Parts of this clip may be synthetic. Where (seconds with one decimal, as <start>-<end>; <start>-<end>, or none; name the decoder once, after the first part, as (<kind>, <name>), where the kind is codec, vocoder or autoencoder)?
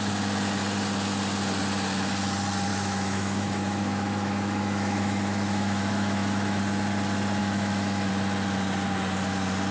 2.7-6.6 (autoencoder, DAC-VAE); 7.4-8.1